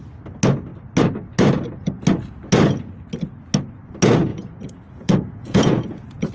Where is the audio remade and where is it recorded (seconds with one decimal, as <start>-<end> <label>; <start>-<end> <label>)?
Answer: 0.0-4.3 recorded; 4.3-6.3 remade